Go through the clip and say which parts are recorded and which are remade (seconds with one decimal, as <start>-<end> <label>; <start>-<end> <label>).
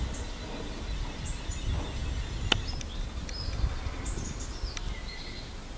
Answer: 0.0-5.8 recorded